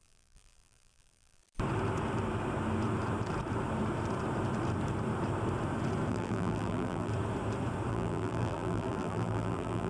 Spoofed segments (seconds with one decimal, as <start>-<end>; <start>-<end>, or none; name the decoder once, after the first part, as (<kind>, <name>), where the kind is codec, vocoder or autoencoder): 0.0-1.4 (vocoder, BigVGAN v2); 6.1-7.1; 7.9-9.9